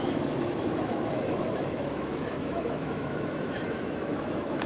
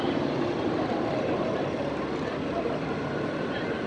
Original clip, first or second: second